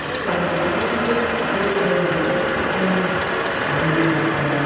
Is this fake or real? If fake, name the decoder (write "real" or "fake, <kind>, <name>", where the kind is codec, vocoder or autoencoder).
real